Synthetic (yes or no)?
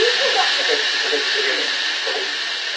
no